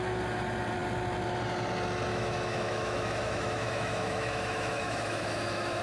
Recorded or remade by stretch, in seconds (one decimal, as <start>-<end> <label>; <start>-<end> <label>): 0.0-2.1 recorded; 2.1-5.8 remade